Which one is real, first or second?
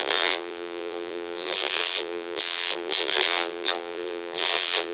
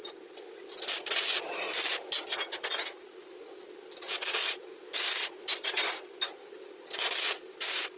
second